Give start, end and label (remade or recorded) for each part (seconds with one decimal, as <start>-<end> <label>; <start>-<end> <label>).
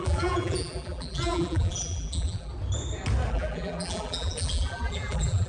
0.0-2.5 remade; 2.5-3.3 recorded; 3.3-5.5 remade